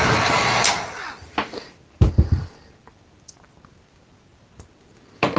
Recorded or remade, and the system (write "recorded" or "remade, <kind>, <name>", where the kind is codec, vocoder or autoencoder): recorded